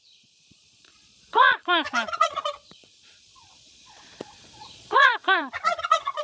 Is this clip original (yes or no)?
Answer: no